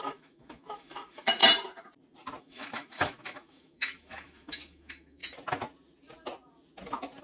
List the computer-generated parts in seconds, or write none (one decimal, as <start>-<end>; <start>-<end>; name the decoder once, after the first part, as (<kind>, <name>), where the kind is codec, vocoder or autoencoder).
0.0-1.4 (autoencoder, DAC-VAE); 2.4-5.2